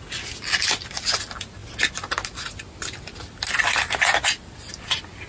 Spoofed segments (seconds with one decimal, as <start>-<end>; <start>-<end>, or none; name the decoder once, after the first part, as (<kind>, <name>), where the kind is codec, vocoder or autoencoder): none